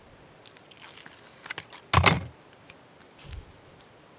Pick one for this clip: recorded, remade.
recorded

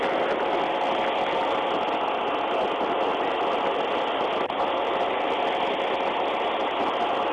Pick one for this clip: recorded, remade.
recorded